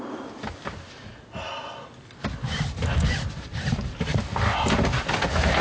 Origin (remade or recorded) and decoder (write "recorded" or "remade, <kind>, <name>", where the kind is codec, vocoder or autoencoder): recorded